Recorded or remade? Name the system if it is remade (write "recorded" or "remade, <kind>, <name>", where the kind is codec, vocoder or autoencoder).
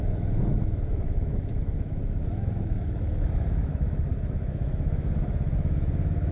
remade, autoencoder, DAC-VAE